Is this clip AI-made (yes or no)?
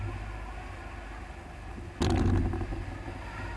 no